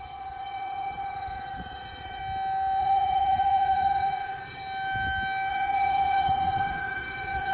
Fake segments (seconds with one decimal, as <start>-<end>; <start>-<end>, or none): 0.0-2.2; 2.8-4.6; 5.5-7.5